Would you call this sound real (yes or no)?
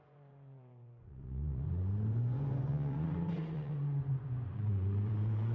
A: no